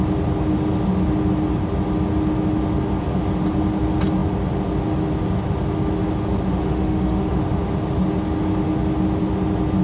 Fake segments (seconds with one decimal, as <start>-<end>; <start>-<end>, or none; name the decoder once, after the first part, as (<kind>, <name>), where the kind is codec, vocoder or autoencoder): 6.6-7.4 (autoencoder, DAC-VAE)